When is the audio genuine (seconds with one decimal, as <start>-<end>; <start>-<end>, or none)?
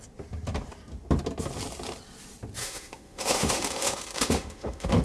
0.0-2.6